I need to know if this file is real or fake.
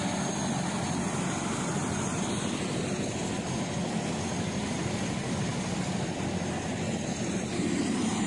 real